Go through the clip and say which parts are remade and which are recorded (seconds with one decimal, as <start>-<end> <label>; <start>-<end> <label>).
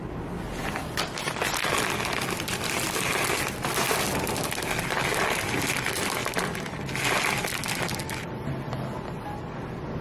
0.0-6.2 recorded; 6.2-6.7 remade; 6.7-10.0 recorded